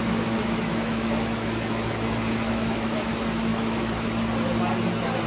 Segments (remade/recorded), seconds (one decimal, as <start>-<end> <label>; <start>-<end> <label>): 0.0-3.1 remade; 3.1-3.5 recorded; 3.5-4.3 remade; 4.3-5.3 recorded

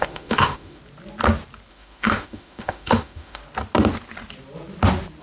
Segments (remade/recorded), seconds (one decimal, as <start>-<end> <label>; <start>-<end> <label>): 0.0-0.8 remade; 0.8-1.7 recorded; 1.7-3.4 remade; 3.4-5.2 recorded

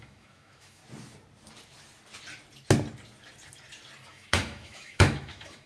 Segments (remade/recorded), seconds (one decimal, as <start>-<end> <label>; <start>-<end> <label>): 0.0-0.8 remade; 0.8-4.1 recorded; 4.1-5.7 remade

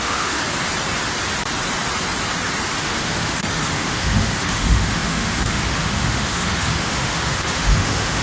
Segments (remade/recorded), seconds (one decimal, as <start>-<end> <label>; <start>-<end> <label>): 0.0-0.4 remade; 0.4-2.8 recorded; 2.8-8.2 remade

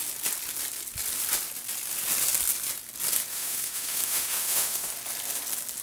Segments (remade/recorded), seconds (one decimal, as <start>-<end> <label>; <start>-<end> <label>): 0.0-3.3 recorded; 3.3-4.9 remade; 4.9-5.8 recorded